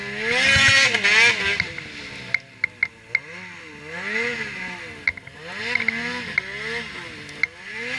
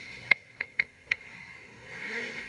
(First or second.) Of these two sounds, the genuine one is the first